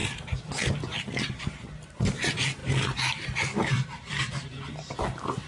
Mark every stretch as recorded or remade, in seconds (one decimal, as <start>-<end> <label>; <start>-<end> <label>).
0.0-2.6 recorded; 2.6-4.6 remade; 4.6-5.5 recorded